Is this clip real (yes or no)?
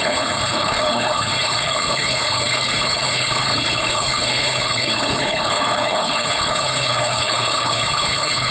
no